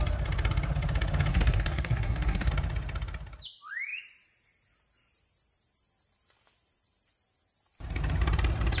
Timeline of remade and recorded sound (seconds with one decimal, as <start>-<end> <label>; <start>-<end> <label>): 0.0-1.3 recorded; 1.3-2.5 remade; 2.5-8.8 recorded